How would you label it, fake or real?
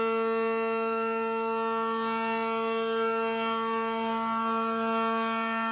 real